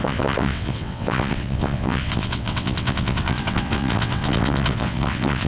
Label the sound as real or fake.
fake